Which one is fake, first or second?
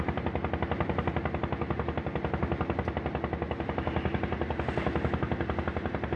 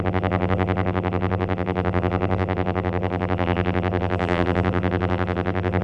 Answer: second